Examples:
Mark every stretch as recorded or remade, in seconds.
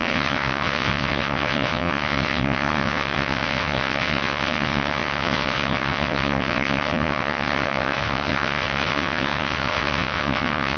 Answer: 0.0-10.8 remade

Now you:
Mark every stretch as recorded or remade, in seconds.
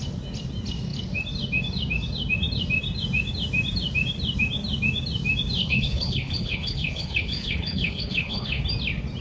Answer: 0.0-5.6 recorded; 5.6-8.6 remade; 8.6-9.2 recorded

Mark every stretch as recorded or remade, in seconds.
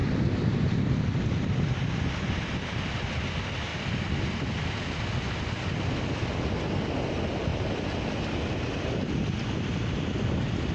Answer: 0.0-10.7 recorded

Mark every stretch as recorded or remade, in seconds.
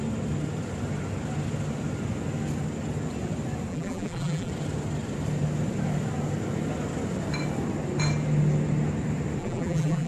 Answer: 0.0-3.7 recorded; 3.7-4.5 remade; 4.5-9.4 recorded; 9.4-10.1 remade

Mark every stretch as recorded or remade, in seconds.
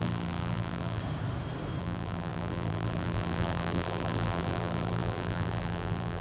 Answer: 0.0-1.0 remade; 1.0-1.8 recorded; 1.8-6.2 remade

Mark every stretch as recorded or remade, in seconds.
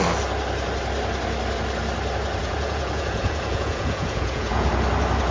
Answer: 0.0-2.4 recorded; 2.4-4.7 remade; 4.7-5.3 recorded